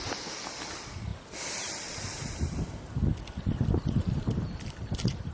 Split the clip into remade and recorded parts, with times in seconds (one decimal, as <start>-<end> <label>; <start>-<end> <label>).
0.0-5.3 recorded